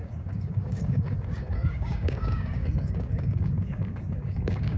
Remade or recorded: remade